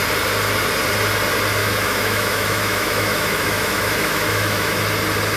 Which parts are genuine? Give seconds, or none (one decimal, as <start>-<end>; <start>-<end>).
0.0-1.6; 4.8-5.4